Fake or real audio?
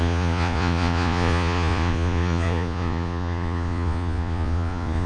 fake